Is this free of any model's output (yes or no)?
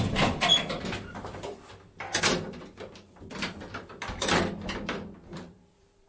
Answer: no